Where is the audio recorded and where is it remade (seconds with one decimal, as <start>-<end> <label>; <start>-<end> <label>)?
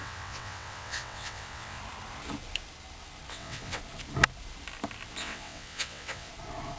0.0-1.8 remade; 1.8-3.3 recorded; 3.3-3.8 remade; 3.8-5.2 recorded; 5.2-6.3 remade; 6.3-6.8 recorded